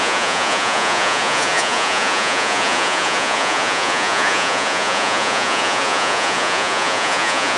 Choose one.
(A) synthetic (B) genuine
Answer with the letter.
A